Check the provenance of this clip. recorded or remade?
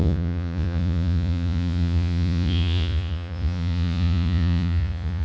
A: remade